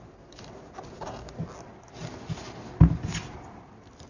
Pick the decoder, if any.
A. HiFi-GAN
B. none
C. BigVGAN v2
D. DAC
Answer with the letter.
B